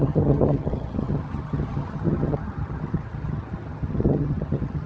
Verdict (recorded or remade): remade